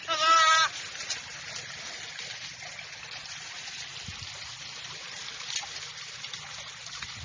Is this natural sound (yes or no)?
yes